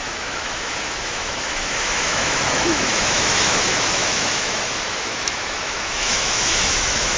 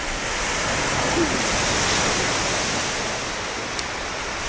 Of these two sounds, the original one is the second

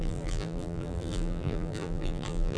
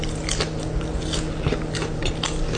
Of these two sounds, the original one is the second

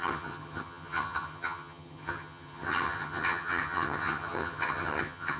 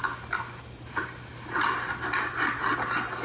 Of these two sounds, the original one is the second